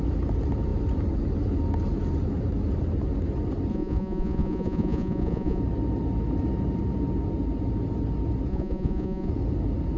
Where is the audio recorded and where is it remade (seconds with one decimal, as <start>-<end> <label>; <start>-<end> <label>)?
0.0-3.7 recorded; 3.7-5.6 remade; 5.6-8.5 recorded; 8.5-9.3 remade; 9.3-10.0 recorded